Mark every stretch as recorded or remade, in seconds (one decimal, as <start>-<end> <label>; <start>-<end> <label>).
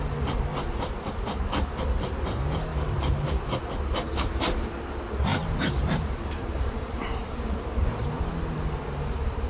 0.0-0.5 recorded; 0.5-1.1 remade; 1.1-5.3 recorded; 5.3-8.2 remade; 8.2-9.5 recorded